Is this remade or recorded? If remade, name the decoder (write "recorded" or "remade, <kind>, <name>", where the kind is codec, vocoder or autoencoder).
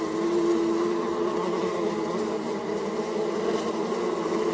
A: recorded